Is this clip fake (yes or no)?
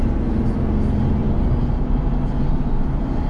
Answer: no